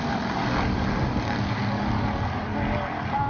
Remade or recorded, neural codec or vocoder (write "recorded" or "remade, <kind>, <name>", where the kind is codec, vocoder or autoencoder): recorded